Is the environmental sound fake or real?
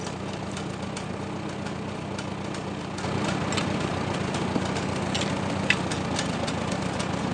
real